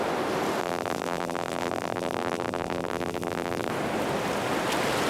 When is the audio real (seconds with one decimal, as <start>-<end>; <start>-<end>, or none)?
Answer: 0.0-0.6; 3.7-5.1